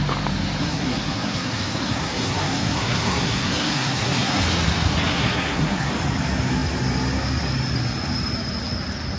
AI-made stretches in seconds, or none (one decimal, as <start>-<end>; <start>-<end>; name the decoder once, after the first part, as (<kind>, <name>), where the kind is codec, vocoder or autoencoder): 0.6-4.4 (codec, SNAC); 5.1-5.9